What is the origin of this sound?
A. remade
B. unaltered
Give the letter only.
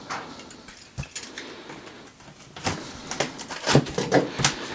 B